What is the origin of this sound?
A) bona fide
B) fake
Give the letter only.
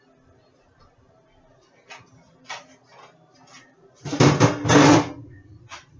A